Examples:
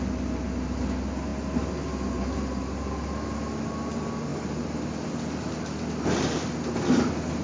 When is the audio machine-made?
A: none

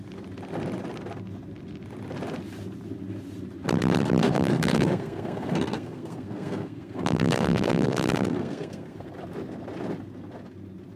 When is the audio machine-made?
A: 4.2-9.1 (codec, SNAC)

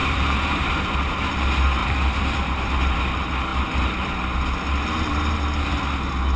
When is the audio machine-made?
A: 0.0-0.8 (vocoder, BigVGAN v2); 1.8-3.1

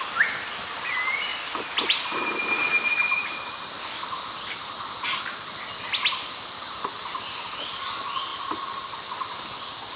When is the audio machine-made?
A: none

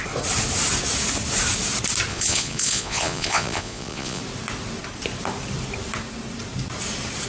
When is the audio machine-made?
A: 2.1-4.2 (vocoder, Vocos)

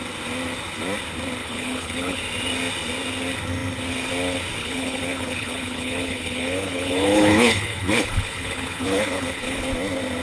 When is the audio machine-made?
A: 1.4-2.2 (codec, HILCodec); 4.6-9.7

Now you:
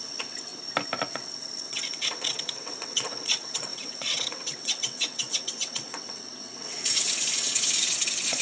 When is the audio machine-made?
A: 0.0-0.5 (vocoder, WaveNeXt); 1.1-8.4

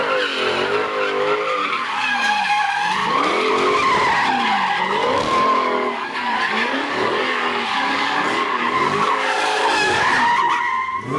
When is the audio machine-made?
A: 1.6-2.5 (codec, DAC); 3.0-3.5; 5.0-10.1